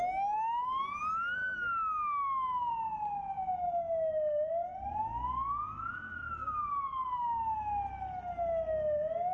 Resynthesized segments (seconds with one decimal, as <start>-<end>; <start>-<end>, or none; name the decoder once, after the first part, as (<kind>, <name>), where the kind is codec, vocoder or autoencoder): none